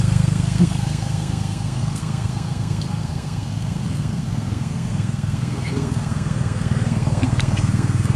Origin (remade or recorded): remade